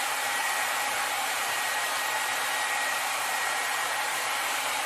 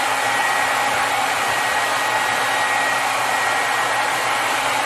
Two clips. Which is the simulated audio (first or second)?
first